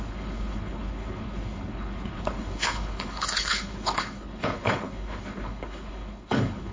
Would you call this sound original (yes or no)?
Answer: no